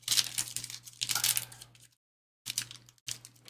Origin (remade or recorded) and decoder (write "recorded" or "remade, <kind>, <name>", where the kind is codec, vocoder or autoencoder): recorded